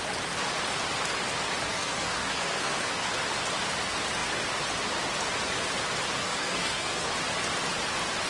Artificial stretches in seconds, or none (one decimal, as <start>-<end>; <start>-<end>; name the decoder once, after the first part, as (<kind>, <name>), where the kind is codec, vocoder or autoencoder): 1.7-3.1 (codec, SNAC); 6.2-7.1